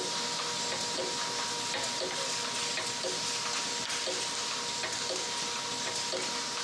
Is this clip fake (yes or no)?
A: no